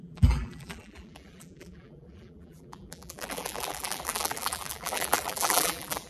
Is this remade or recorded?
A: remade